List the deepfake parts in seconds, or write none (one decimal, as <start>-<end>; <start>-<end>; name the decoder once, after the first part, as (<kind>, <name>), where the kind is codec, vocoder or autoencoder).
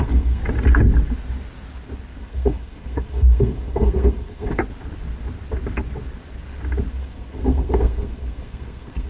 0.0-0.4 (codec, SNAC); 2.2-4.6; 6.9-9.1